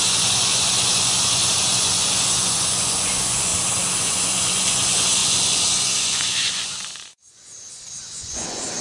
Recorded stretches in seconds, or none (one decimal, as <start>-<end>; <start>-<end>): 3.5-4.0